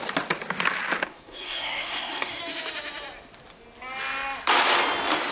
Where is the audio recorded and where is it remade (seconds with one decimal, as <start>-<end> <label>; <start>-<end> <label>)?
0.0-1.1 recorded; 1.1-2.4 remade; 2.4-5.3 recorded